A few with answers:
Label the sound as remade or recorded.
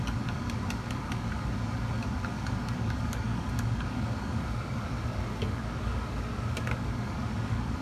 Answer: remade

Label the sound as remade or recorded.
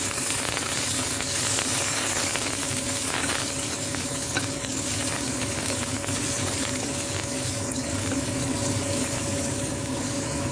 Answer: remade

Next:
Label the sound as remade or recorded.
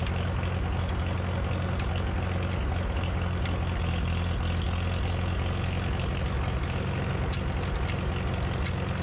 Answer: recorded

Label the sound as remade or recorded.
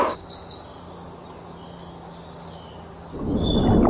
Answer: recorded